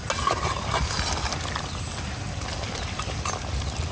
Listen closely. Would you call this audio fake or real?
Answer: real